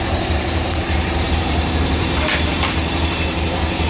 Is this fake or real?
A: fake